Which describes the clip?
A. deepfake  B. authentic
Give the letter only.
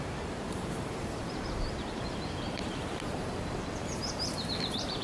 A